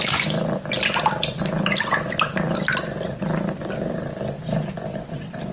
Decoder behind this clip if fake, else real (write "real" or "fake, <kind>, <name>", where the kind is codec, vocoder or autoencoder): real